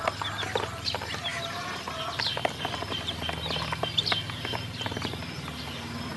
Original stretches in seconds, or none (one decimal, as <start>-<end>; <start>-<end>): 0.0-6.2